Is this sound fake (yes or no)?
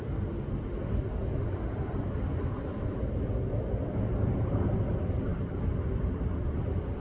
no